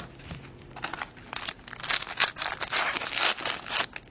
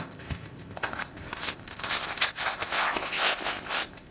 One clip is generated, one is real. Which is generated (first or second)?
second